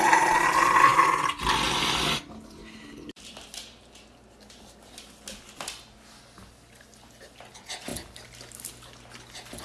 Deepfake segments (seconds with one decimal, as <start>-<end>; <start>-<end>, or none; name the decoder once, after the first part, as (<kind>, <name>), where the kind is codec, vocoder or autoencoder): none